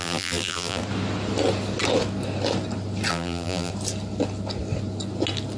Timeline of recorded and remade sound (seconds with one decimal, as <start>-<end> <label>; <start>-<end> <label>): 0.0-0.8 remade; 0.8-3.1 recorded; 3.1-3.7 remade; 3.7-5.6 recorded